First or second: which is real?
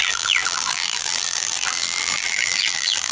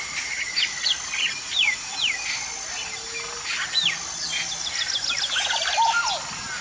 second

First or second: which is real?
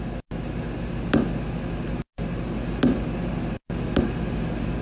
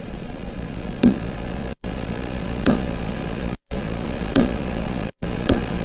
first